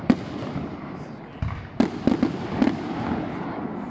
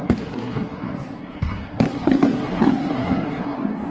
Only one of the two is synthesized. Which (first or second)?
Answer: second